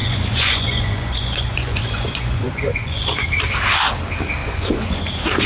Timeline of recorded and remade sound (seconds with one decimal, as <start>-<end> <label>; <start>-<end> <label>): 0.0-3.3 remade; 3.3-4.4 recorded; 4.4-5.0 remade; 5.0-5.5 recorded